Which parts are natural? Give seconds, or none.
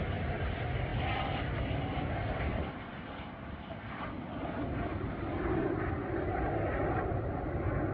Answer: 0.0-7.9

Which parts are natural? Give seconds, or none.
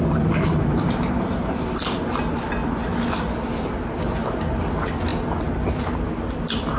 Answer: 0.0-6.8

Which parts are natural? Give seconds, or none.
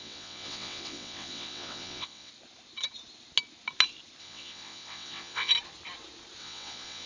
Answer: 2.3-4.2; 5.5-6.4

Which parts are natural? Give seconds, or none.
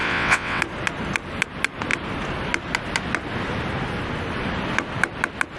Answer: 0.6-5.6